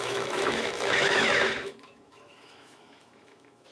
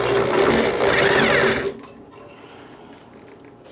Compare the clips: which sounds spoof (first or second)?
first